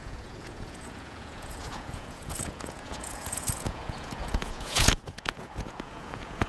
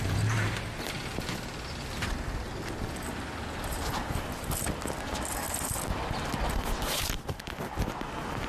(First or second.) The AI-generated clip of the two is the first